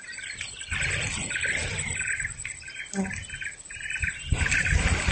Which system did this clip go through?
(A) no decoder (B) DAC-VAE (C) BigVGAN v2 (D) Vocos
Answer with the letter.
A